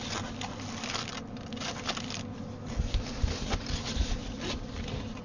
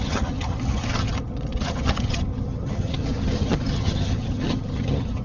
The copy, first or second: second